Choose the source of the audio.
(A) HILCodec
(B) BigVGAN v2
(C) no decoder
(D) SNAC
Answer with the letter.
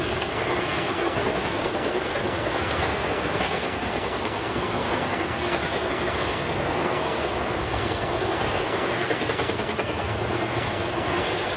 D